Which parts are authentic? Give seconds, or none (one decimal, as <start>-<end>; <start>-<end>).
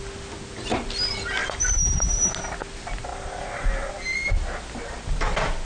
0.0-1.4; 2.3-3.1; 3.9-5.6